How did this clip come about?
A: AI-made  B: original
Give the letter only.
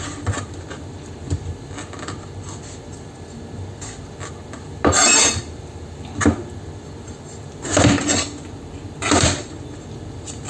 A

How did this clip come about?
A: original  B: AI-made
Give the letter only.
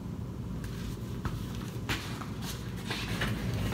A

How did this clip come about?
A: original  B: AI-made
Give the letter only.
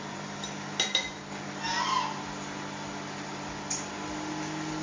A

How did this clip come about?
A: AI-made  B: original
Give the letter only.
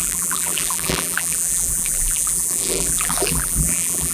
A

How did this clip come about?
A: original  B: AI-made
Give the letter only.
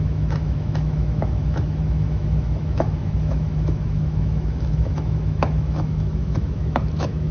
B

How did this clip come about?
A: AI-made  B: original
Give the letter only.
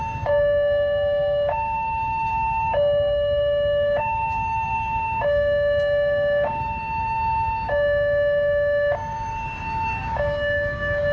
A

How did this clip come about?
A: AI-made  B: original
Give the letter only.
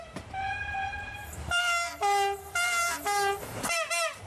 A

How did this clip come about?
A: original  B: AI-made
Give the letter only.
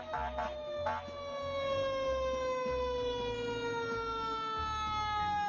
A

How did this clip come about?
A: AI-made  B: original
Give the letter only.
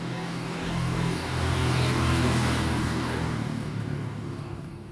A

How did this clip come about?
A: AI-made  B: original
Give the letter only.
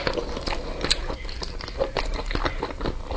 B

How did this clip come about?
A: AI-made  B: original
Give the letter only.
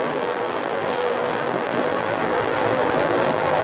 A